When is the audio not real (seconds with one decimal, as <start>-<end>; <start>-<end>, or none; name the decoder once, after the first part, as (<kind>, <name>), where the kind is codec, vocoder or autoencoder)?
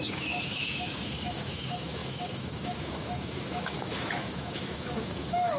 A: 0.0-5.6 (autoencoder, DAC-VAE)